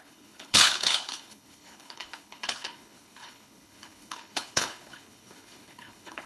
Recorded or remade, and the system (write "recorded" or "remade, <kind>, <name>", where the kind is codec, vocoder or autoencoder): remade, codec, HILCodec